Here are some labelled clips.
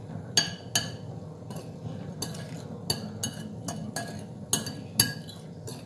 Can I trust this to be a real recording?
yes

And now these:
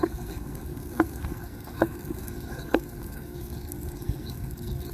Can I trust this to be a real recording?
no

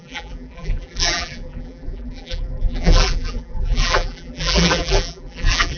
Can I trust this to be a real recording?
no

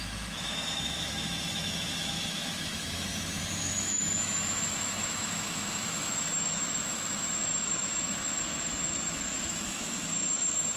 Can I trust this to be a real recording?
no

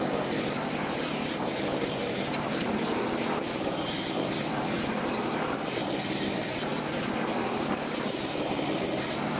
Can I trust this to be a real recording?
yes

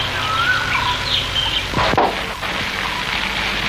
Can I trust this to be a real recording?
yes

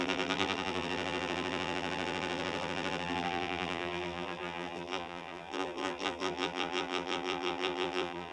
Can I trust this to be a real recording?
no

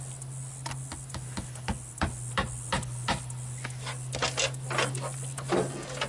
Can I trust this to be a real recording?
yes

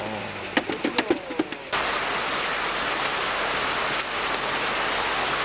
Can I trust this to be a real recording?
yes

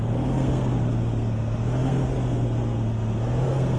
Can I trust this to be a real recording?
no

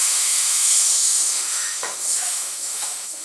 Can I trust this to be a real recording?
no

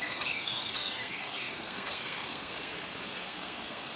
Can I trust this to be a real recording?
no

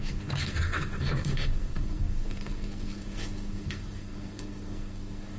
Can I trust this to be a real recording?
no